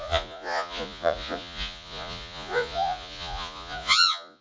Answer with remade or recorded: remade